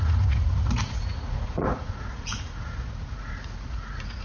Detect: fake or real fake